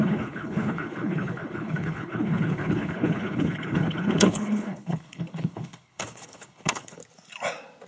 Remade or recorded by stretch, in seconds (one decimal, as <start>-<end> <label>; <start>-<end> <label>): 0.0-7.0 remade; 7.0-7.9 recorded